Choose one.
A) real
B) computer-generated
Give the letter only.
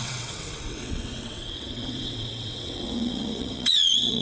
B